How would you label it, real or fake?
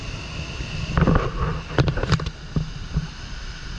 real